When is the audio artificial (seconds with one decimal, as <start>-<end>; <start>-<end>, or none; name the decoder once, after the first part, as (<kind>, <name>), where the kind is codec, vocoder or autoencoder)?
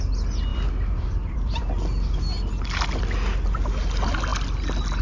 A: 0.5-1.6 (vocoder, BigVGAN v2)